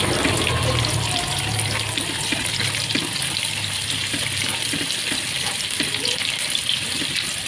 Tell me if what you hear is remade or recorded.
recorded